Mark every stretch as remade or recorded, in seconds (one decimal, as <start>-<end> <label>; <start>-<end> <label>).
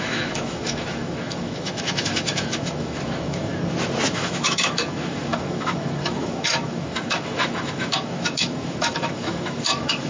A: 0.0-3.5 remade; 3.5-4.1 recorded; 4.1-10.1 remade